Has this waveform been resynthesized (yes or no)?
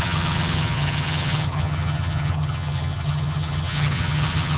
yes